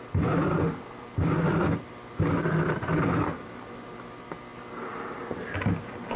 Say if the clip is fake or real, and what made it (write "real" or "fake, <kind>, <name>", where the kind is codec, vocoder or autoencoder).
real